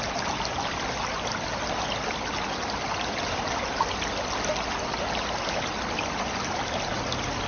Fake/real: real